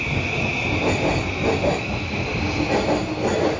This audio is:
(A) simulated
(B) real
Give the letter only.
B